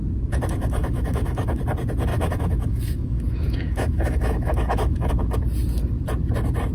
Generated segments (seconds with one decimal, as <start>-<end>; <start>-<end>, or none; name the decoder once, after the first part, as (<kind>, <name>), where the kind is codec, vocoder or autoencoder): 0.8-1.6 (autoencoder, DAC-VAE); 2.1-5.1